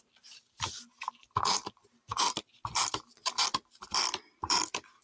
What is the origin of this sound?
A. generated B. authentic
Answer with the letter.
A